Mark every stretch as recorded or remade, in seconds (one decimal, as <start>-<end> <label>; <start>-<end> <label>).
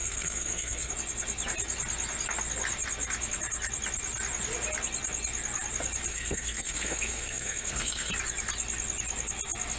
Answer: 0.0-0.9 remade; 0.9-6.1 recorded; 6.1-8.1 remade; 8.1-9.8 recorded